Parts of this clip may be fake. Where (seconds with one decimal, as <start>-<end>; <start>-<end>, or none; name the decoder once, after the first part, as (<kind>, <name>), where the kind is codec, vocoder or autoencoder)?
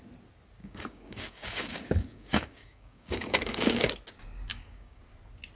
0.6-3.9 (codec, DAC); 4.5-5.0